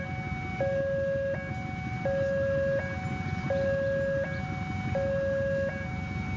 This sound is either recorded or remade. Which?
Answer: recorded